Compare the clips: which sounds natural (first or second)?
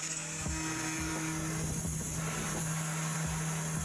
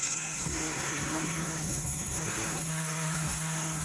first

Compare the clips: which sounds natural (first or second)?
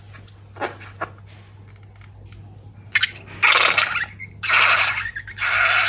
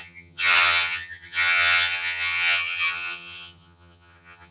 first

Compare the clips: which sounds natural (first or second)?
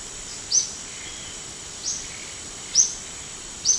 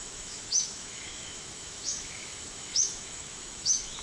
first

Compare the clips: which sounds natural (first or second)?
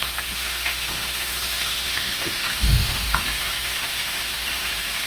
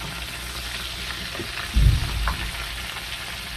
second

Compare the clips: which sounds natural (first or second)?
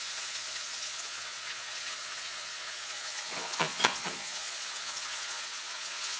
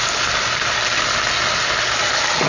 second